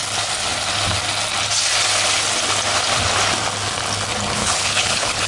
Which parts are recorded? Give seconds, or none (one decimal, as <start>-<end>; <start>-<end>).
0.0-4.4

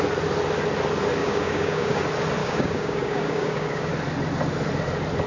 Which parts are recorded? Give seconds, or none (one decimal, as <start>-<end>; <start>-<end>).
0.0-1.2; 2.0-2.4; 3.9-5.3

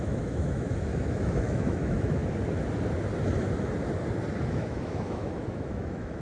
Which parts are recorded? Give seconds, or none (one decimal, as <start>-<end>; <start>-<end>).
2.2-4.5

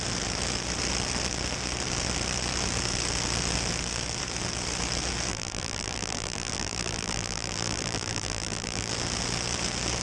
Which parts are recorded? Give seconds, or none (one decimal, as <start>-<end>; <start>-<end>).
0.0-5.3; 8.9-10.0